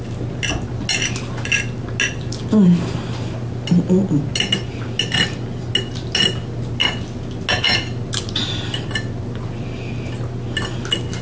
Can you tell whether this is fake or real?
real